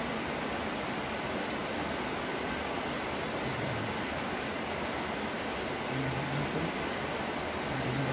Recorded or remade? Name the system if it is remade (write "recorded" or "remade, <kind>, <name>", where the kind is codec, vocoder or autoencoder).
recorded